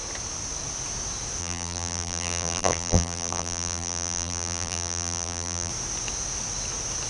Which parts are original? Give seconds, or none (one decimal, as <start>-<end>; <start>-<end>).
0.0-1.4; 5.7-7.1

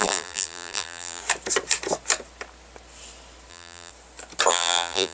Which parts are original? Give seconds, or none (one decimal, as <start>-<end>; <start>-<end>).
1.2-3.5; 3.9-4.5

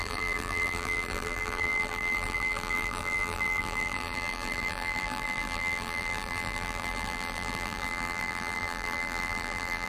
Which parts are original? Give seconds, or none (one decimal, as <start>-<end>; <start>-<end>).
none

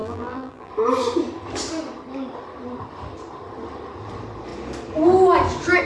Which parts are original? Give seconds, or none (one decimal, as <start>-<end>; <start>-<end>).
0.7-5.8

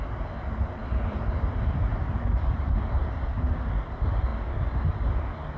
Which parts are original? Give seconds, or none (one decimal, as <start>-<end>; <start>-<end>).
0.0-0.8; 2.7-4.3; 4.9-5.6